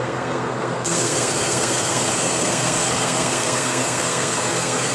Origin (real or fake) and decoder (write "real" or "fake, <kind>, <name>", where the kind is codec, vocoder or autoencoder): fake, codec, SNAC